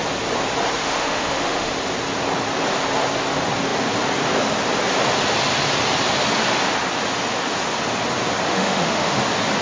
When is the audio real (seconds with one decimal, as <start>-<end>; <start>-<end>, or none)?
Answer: 0.0-0.8; 1.7-8.5; 9.2-9.6